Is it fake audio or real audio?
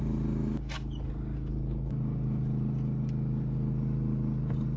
real